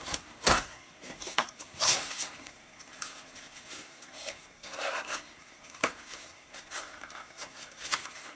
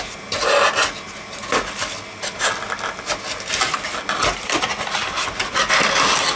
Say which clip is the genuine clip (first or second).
second